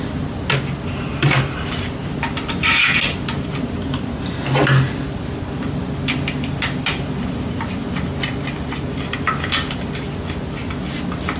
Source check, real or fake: real